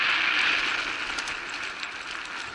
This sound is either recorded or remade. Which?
recorded